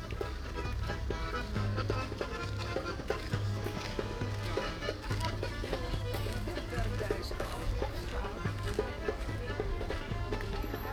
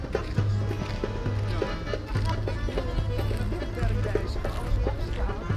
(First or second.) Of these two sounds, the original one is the second